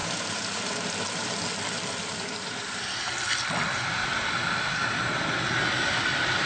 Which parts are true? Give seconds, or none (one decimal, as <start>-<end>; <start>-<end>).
1.4-2.0; 3.1-4.0; 5.0-6.5